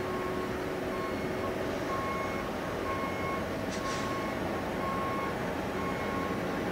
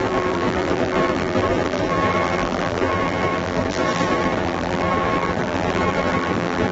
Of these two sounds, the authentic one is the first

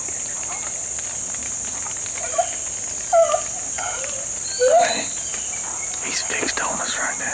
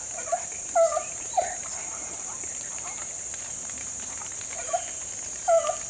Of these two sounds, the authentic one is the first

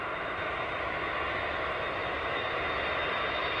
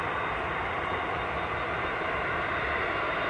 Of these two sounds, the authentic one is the first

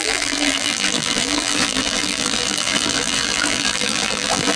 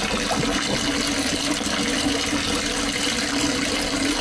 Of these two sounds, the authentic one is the second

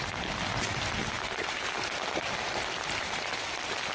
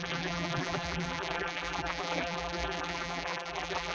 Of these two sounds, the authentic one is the first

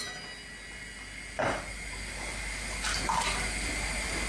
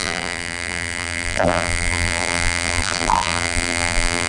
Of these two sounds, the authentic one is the first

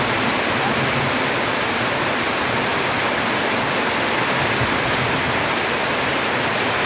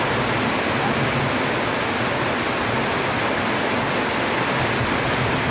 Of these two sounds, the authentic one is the second